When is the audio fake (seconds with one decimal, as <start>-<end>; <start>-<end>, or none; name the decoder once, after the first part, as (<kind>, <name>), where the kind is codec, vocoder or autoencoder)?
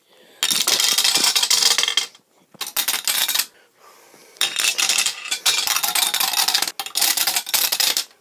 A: 4.2-5.5 (vocoder, BigVGAN v2); 7.0-8.2